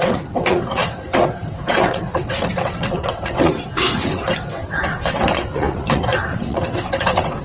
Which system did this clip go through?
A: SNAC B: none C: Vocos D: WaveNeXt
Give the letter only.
D